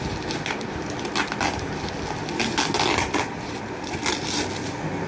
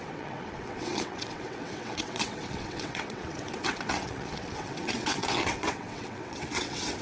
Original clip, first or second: first